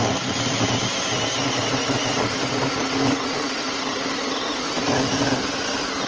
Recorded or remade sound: recorded